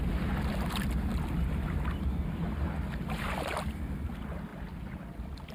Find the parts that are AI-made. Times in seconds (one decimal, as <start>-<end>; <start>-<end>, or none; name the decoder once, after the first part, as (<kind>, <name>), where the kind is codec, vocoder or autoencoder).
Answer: none